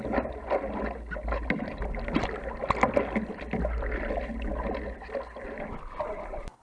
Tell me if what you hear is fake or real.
real